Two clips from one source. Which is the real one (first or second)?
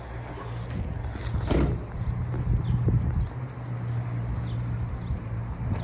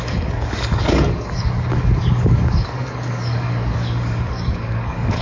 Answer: first